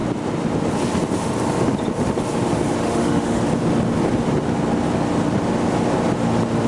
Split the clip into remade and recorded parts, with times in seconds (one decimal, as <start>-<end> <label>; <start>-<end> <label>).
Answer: 0.0-2.8 recorded; 2.8-3.4 remade; 3.4-6.7 recorded